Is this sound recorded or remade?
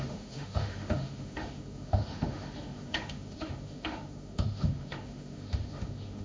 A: remade